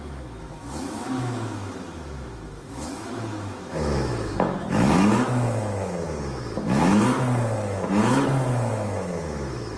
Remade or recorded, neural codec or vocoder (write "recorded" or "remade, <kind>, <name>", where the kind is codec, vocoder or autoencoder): remade, autoencoder, DAC-VAE